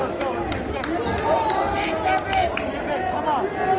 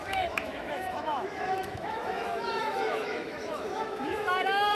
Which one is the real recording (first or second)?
first